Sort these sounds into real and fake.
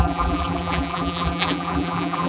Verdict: fake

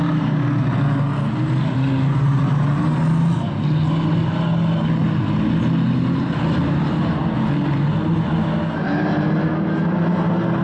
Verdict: real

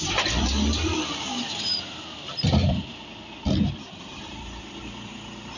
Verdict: fake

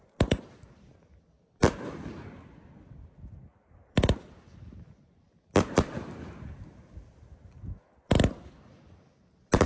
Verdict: real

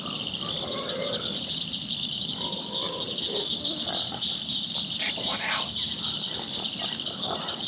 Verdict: real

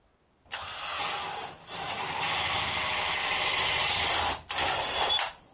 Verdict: real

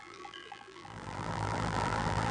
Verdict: fake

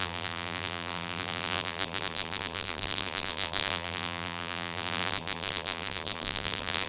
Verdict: fake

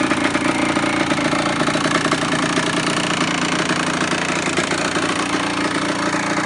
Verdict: real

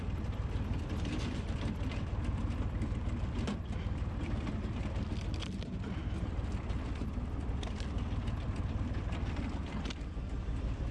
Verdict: fake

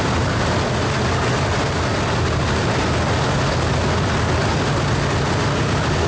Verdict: real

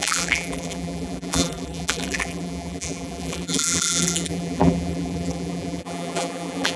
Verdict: fake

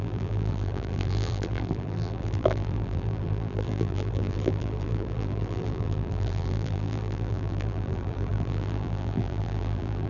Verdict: fake